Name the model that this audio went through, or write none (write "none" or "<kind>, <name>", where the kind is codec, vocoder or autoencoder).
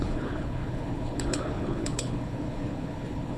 codec, HILCodec